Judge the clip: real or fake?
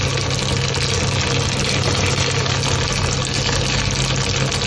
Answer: real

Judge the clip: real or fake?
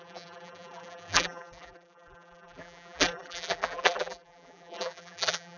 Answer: fake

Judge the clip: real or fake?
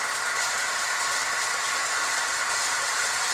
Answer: real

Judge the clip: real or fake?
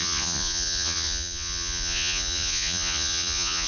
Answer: fake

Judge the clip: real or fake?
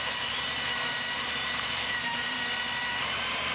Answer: fake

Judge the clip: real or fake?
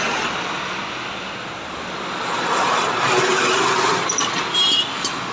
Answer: real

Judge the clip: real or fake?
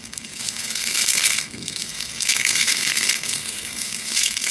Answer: fake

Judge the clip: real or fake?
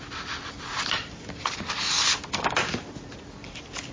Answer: real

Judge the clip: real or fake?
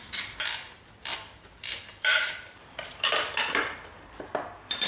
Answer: fake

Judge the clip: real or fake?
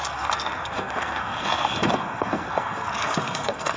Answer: fake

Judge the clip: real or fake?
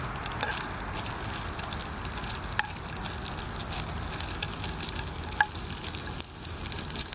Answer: real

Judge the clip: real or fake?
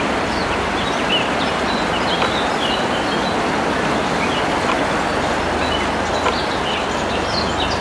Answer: real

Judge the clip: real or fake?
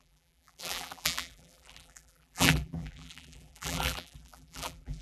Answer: fake